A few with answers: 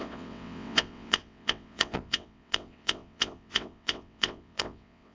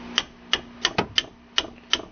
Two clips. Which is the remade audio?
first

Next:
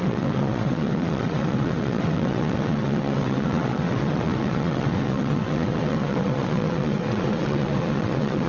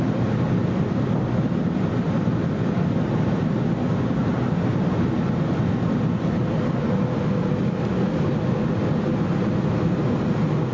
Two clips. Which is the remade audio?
first